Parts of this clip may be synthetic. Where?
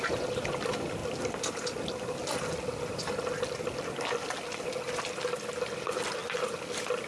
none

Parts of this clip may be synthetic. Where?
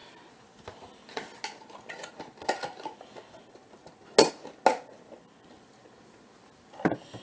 none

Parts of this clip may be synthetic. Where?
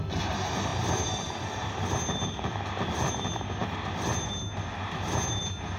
none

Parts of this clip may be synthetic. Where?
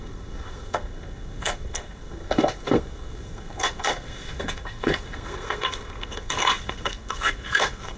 0.0-8.0 (codec, SNAC)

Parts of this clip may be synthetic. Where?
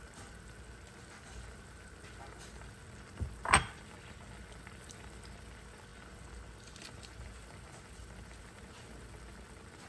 none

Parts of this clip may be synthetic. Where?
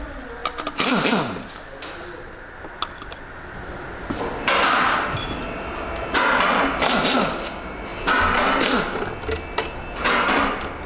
none